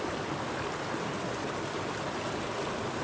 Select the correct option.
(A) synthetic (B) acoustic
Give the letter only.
B